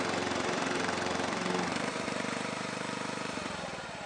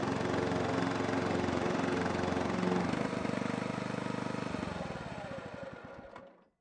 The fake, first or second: first